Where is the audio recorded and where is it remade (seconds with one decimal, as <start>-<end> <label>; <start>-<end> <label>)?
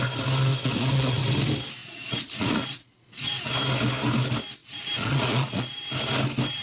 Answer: 0.0-0.5 recorded; 0.5-1.2 remade; 1.2-1.8 recorded; 1.8-3.4 remade; 3.4-4.6 recorded; 4.6-5.8 remade; 5.8-6.6 recorded